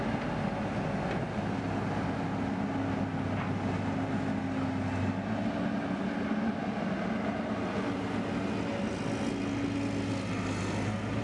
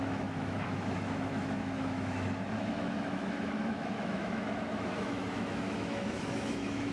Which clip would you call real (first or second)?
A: first